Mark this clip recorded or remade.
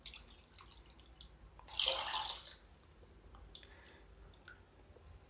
recorded